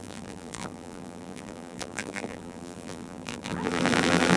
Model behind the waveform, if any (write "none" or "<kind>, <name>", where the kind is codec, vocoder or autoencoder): vocoder, BigVGAN v2